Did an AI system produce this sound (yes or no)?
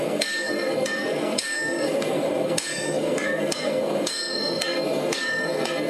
yes